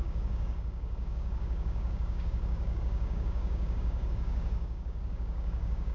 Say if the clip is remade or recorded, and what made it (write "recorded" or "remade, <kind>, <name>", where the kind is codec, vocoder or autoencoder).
remade, codec, DAC